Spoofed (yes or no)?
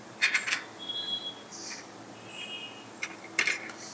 no